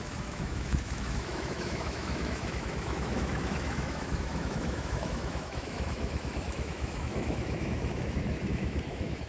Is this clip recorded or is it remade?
remade